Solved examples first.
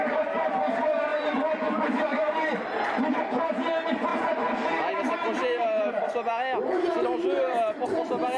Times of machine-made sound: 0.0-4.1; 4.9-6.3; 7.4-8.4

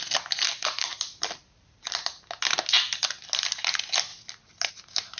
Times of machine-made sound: none

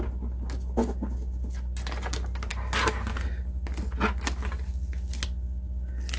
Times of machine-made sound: none

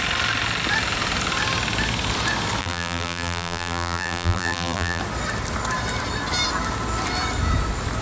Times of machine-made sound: 2.6-5.0

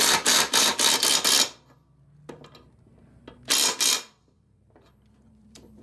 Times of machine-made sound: 0.0-0.7; 4.2-5.8

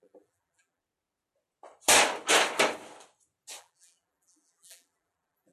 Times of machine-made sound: 0.0-0.8; 3.6-5.5

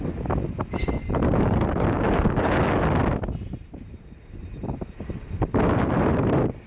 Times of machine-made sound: 1.0-1.7; 4.4-5.5